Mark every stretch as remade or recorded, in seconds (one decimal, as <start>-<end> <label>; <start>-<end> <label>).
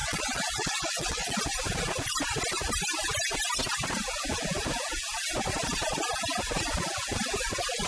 0.0-1.4 remade; 1.4-7.9 recorded